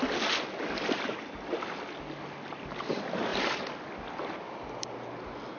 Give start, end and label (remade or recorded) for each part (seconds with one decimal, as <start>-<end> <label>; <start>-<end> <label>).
0.0-5.6 recorded